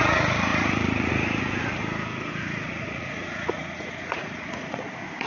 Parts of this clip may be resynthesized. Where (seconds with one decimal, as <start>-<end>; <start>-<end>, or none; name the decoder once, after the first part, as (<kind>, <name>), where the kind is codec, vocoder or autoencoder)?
0.0-1.8 (vocoder, Vocos); 2.3-5.3